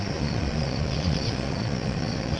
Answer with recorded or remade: remade